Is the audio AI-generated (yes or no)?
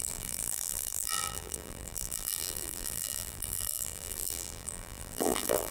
yes